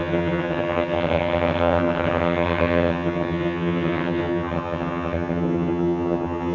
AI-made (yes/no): yes